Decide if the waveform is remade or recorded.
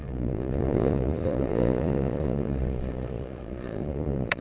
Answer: remade